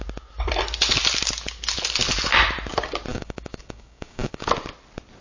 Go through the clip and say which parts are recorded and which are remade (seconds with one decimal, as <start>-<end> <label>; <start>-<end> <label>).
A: 0.0-3.1 recorded; 3.1-4.5 remade; 4.5-5.2 recorded